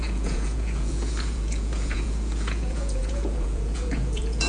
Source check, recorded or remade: remade